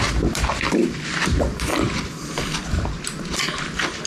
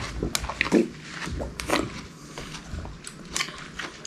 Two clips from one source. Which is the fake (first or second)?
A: first